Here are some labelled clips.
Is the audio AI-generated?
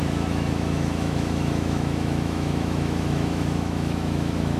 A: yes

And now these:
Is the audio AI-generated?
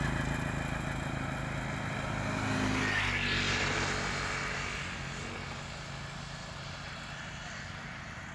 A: no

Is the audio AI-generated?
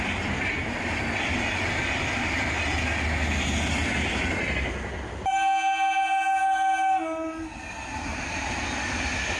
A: no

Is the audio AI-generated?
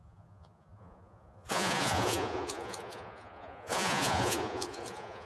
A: yes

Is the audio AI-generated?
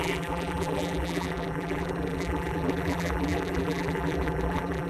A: yes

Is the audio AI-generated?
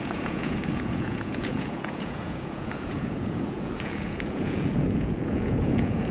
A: yes